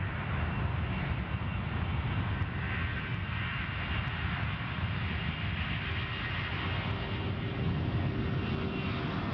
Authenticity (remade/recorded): recorded